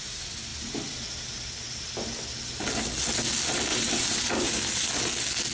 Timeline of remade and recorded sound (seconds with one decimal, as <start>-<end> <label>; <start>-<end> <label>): 0.0-3.7 recorded; 3.7-4.3 remade; 4.3-5.5 recorded